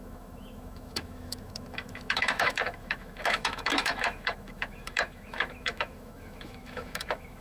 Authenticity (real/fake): fake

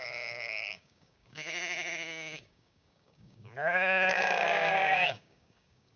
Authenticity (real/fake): fake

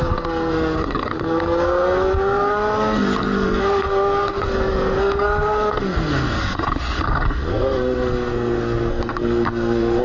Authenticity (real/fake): fake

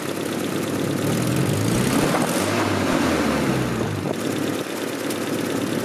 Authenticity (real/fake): real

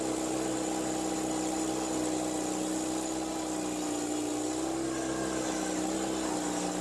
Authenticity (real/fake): real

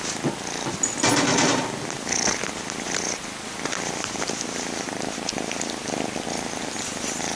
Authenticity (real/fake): real